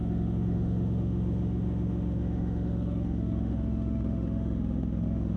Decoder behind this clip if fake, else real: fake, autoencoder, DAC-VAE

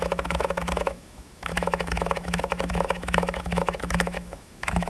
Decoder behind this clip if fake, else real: fake, autoencoder, DAC-VAE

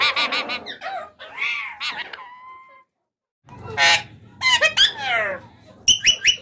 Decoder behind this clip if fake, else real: real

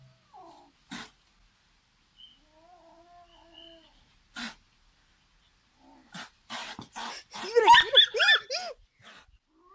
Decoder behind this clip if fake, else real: real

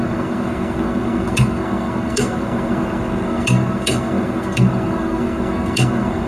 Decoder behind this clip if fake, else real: fake, codec, SNAC